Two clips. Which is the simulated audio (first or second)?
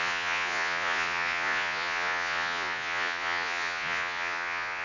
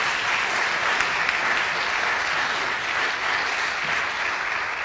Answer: first